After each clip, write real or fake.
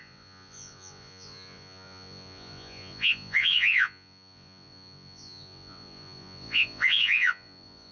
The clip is fake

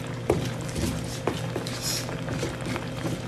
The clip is real